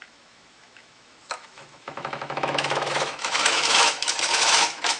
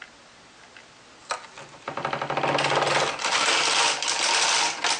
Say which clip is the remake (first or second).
first